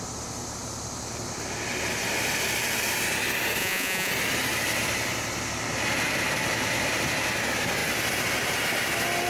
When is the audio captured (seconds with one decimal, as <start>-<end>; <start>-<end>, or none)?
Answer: 0.0-3.6; 4.1-9.3